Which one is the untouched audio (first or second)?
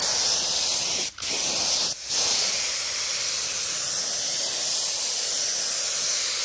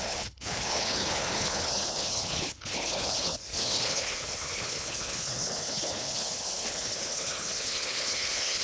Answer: first